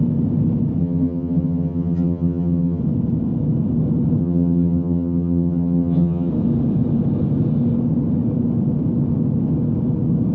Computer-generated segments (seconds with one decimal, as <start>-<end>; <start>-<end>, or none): 0.8-2.8; 4.2-6.3